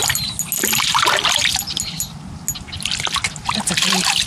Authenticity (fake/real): real